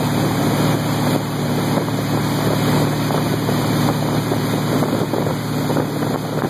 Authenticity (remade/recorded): recorded